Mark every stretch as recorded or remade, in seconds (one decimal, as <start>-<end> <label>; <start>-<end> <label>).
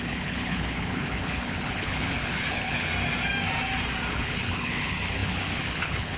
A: 0.0-2.9 remade; 2.9-4.1 recorded; 4.1-6.2 remade